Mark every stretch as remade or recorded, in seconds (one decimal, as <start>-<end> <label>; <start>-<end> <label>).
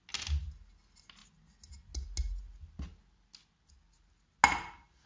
0.0-5.1 recorded